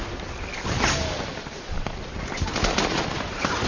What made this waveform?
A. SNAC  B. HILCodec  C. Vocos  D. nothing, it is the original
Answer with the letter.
D